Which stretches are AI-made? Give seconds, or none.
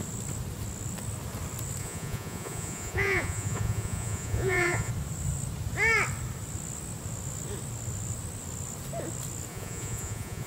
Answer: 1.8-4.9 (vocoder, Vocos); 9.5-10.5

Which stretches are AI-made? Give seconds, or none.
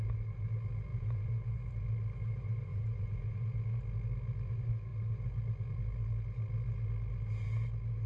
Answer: 0.9-1.7 (vocoder, Vocos); 2.7-3.8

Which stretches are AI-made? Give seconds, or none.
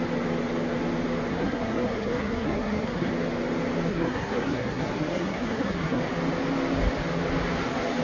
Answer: 1.3-3.1 (codec, SNAC); 3.9-6.0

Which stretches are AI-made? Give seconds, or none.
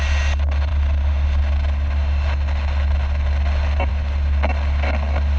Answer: none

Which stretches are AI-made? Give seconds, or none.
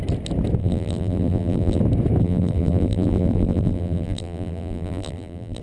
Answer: 0.6-1.8 (vocoder, BigVGAN v2); 2.2-5.6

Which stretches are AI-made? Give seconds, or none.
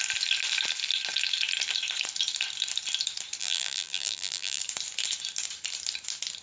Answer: 3.4-4.6 (vocoder, BigVGAN v2)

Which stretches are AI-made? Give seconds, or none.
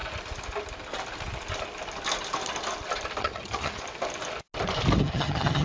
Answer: 3.2-3.8 (vocoder, HiFi-GAN); 5.0-5.6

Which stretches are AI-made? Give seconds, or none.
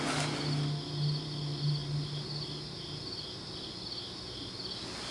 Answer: none